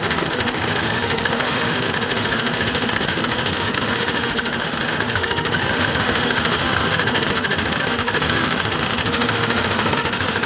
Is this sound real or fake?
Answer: fake